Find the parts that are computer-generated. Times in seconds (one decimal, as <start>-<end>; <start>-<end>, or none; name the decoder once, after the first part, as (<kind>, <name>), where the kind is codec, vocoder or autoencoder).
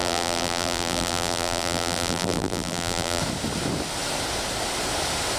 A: 0.0-3.2 (vocoder, BigVGAN v2)